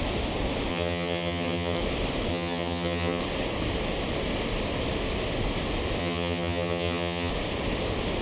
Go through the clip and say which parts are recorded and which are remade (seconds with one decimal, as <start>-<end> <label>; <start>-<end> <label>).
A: 0.0-0.7 recorded; 0.7-1.8 remade; 1.8-2.3 recorded; 2.3-3.2 remade; 3.2-6.0 recorded; 6.0-7.3 remade; 7.3-8.2 recorded

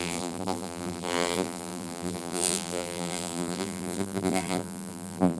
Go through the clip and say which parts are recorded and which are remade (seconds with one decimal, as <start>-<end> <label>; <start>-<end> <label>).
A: 0.0-5.4 remade

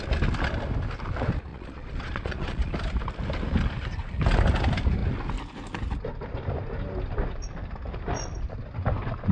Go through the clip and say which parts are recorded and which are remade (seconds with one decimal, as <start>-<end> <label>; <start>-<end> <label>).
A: 0.0-1.5 recorded; 1.5-2.7 remade; 2.7-9.3 recorded

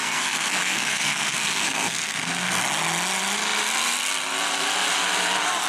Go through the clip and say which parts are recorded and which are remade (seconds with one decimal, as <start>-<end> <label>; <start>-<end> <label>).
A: 0.0-2.6 remade; 2.6-5.7 recorded

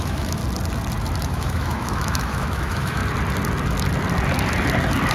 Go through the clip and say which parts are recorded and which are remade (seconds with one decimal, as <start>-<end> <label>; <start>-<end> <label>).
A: 0.0-0.4 remade; 0.4-1.2 recorded; 1.2-3.0 remade; 3.0-5.1 recorded

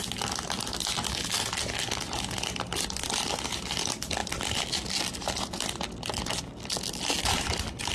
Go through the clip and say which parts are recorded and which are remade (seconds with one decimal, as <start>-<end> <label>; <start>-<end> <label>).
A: 0.0-7.9 recorded

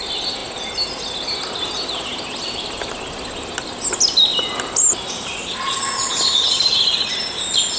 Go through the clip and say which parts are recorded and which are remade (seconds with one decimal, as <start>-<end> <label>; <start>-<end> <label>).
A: 0.0-7.8 recorded